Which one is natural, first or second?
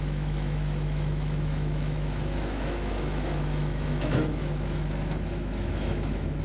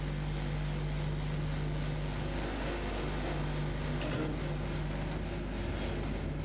second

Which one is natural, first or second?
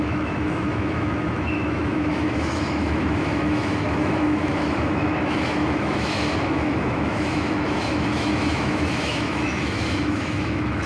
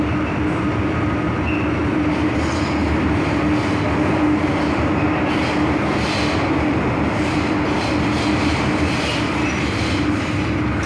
second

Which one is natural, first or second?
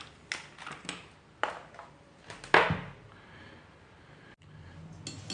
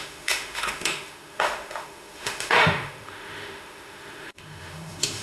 first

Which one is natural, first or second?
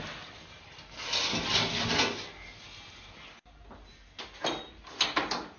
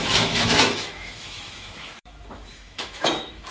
first